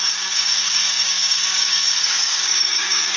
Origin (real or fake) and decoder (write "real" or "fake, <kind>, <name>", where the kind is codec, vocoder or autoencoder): fake, codec, DAC